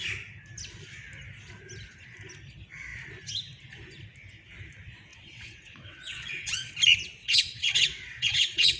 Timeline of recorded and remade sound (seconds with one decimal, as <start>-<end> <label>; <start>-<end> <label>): 0.0-5.1 recorded; 5.1-6.7 remade; 6.7-7.2 recorded; 7.2-8.8 remade